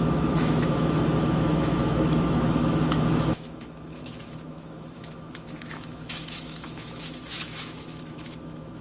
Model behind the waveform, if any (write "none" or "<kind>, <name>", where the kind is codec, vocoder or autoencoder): autoencoder, DAC-VAE